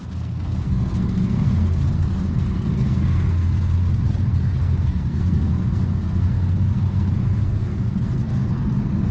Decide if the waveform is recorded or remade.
remade